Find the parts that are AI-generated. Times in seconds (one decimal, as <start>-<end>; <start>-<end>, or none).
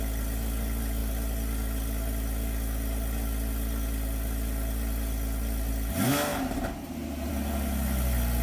none